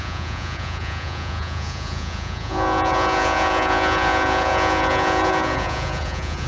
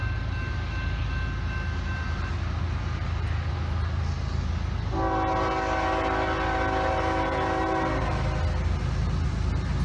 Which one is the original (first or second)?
second